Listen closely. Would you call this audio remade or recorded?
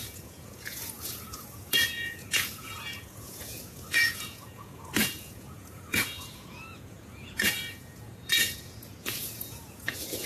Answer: remade